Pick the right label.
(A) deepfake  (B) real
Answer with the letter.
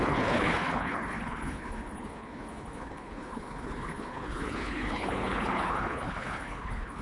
A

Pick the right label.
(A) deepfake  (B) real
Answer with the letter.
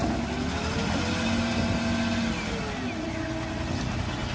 B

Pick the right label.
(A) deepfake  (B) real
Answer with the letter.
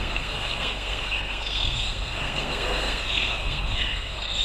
A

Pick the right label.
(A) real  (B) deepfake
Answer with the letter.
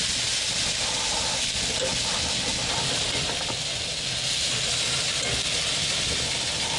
A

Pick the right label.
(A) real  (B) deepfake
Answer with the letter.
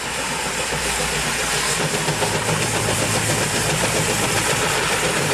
B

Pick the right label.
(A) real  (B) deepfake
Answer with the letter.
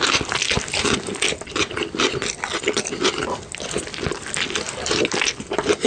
A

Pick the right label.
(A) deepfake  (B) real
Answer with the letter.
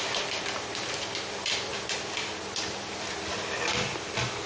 B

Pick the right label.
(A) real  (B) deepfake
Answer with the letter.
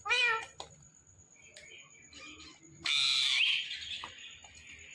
A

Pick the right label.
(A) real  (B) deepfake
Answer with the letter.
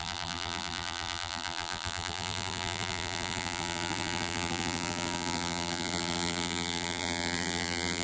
B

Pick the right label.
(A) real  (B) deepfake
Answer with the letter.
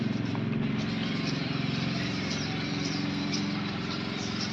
B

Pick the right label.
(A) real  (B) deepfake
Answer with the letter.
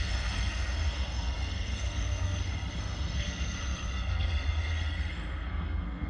B